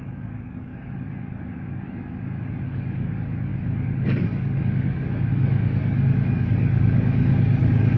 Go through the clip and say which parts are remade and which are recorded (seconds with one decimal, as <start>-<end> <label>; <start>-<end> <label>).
0.0-8.0 remade

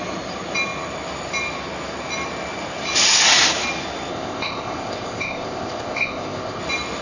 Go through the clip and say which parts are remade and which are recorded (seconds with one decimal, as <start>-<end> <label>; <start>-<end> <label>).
0.0-4.1 recorded; 4.1-6.6 remade; 6.6-7.0 recorded

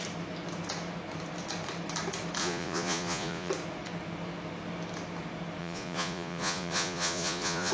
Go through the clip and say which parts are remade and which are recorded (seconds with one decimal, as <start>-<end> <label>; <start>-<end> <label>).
0.0-2.4 recorded; 2.4-3.5 remade; 3.5-5.6 recorded; 5.6-7.7 remade